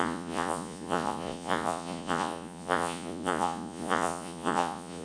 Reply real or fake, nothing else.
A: fake